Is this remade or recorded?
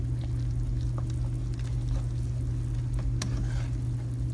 recorded